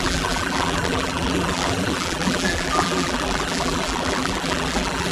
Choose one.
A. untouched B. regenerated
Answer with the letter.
B